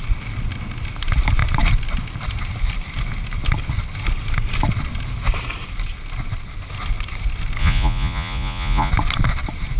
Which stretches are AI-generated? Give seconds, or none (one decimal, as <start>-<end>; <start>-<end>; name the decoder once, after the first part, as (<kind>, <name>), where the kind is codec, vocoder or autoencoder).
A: 7.6-8.9 (vocoder, Vocos)